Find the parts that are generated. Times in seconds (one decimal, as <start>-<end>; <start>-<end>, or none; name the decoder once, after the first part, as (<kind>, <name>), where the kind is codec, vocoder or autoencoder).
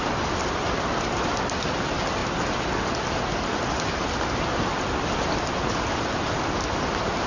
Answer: none